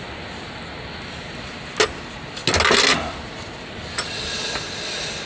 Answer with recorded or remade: recorded